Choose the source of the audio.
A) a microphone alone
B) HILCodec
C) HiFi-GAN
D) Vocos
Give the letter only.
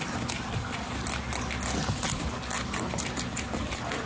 A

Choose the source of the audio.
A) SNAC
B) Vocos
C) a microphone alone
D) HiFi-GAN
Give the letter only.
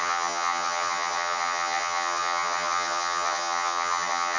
D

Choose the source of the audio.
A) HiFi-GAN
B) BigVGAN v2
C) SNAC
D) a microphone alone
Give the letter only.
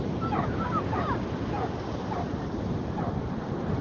D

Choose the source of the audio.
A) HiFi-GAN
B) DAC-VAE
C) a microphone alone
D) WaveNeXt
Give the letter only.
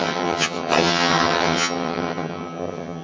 A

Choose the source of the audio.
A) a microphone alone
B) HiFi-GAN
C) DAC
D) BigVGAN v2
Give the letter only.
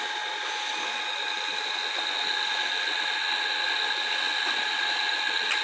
A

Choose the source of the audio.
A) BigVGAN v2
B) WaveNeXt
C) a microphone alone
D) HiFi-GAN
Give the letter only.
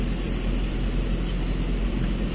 C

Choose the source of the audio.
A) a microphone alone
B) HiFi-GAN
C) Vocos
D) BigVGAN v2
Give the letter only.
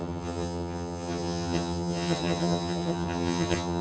B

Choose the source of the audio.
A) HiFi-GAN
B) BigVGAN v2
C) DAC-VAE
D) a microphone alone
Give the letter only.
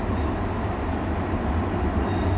D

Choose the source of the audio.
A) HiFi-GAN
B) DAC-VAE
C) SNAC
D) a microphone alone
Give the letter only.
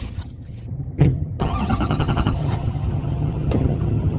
A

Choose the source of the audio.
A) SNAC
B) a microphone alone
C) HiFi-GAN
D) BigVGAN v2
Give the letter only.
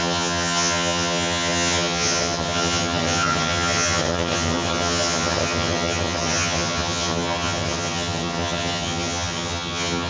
C